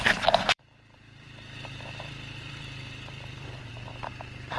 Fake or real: fake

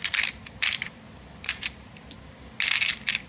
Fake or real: real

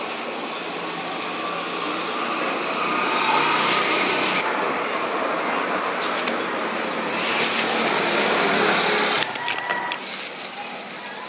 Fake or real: real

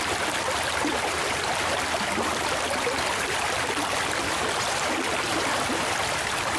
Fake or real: fake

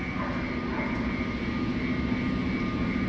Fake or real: real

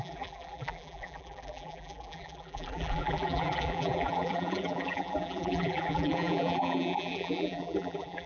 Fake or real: fake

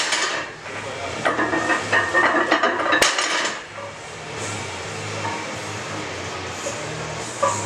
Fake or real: real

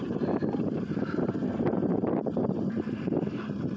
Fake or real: fake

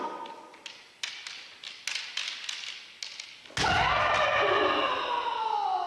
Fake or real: real